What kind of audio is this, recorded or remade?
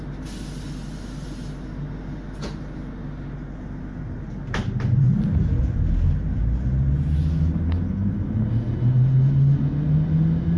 recorded